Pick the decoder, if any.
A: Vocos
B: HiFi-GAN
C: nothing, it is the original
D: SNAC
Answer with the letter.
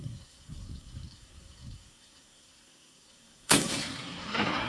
D